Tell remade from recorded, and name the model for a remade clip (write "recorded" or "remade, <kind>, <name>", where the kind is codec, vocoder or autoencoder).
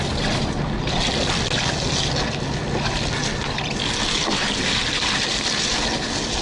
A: recorded